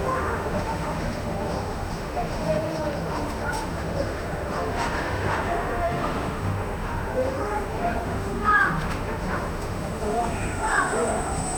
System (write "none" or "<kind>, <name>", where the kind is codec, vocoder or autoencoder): autoencoder, DAC-VAE